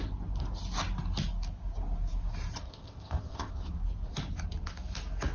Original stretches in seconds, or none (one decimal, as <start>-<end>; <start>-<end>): 0.0-2.7; 3.5-5.3